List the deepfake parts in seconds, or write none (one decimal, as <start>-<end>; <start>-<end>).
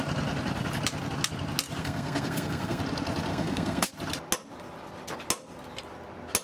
1.8-2.8; 3.3-3.9